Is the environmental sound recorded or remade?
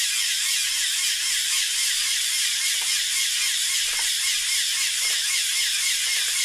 recorded